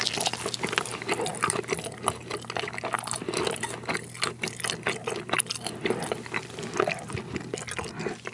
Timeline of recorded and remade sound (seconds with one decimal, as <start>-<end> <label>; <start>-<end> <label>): 0.0-8.3 recorded